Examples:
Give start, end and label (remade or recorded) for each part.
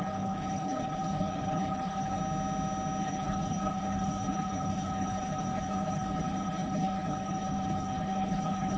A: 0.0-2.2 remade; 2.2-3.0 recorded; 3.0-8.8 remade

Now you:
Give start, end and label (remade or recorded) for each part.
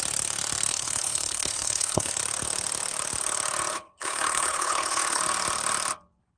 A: 0.0-0.7 recorded; 0.7-2.2 remade; 2.2-3.7 recorded; 3.7-5.2 remade; 5.2-6.4 recorded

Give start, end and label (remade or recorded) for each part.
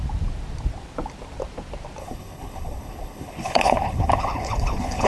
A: 0.0-2.0 recorded; 2.0-5.1 remade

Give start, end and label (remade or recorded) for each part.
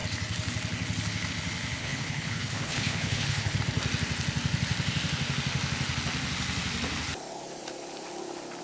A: 0.0-1.8 recorded; 1.8-3.6 remade; 3.6-8.6 recorded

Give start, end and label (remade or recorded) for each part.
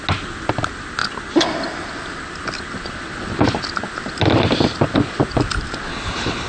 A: 0.0-5.9 recorded; 5.9-6.5 remade